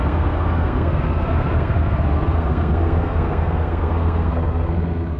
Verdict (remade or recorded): remade